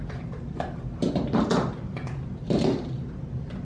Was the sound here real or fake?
fake